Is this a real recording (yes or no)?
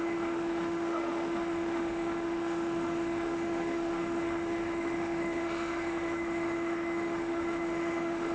no